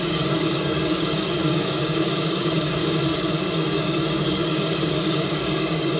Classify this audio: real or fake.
fake